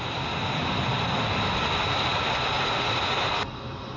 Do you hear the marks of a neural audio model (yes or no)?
no